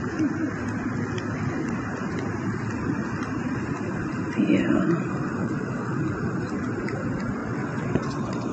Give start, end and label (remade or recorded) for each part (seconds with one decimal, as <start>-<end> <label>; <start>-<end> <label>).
0.0-5.4 recorded; 5.4-6.0 remade; 6.0-7.4 recorded; 7.4-8.5 remade